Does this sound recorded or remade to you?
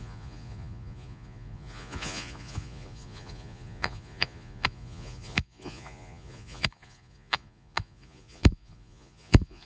remade